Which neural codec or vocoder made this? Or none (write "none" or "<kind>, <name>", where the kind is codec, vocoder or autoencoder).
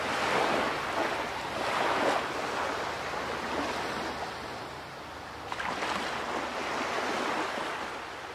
none